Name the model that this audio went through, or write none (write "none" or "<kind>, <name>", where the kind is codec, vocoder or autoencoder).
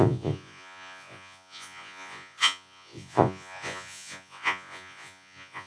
vocoder, Vocos